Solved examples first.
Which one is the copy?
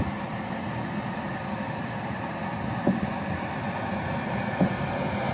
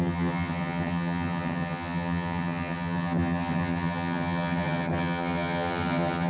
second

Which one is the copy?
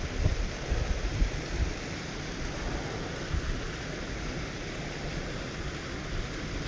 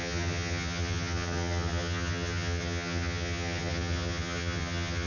second